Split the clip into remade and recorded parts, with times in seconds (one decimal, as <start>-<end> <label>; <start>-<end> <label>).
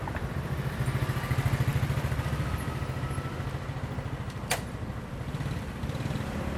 0.0-6.6 recorded